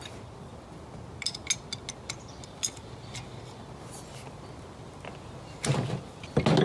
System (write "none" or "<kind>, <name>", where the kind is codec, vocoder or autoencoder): none